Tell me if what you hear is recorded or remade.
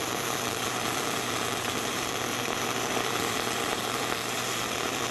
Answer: remade